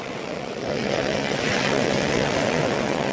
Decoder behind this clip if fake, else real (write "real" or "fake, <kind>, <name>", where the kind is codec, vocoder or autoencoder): fake, vocoder, WaveNeXt